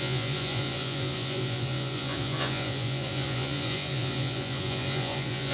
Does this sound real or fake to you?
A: fake